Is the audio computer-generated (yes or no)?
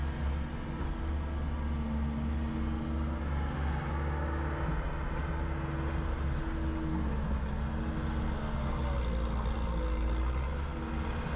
no